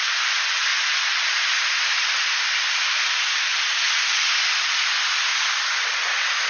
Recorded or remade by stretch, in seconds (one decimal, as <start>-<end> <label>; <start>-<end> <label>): 0.0-6.5 recorded